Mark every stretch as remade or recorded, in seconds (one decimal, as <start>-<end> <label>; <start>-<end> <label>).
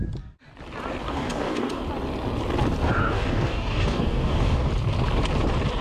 0.0-1.0 recorded; 1.0-1.8 remade; 1.8-3.0 recorded; 3.0-4.7 remade; 4.7-5.8 recorded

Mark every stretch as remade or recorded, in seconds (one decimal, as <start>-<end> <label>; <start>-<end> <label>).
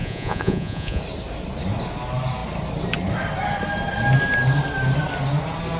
0.0-1.0 remade; 1.0-5.8 recorded